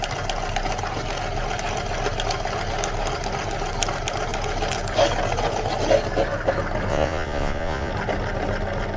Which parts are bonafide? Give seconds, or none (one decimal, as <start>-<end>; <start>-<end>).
0.0-6.9; 7.9-9.0